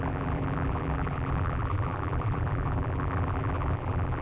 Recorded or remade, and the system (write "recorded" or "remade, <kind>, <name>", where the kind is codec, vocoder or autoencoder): remade, vocoder, BigVGAN v2